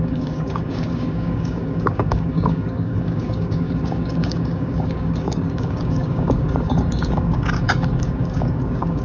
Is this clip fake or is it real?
fake